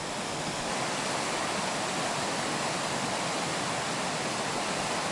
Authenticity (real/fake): real